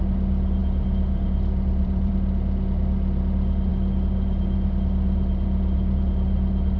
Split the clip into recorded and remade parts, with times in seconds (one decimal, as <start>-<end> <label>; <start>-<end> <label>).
0.0-0.6 recorded; 0.6-2.1 remade; 2.1-6.8 recorded

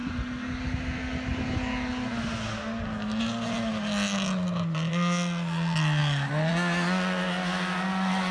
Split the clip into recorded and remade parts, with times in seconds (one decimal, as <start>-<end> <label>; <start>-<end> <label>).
0.0-8.3 recorded

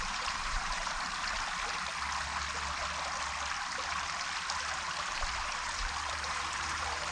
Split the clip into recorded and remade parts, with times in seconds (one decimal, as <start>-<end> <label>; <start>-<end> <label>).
0.0-0.8 remade; 0.8-5.1 recorded; 5.1-7.1 remade

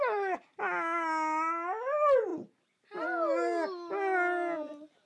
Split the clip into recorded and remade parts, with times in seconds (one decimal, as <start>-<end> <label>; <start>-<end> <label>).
0.0-5.1 recorded